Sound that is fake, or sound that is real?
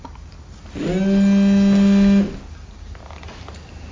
real